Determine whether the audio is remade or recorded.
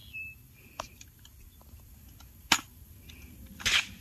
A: recorded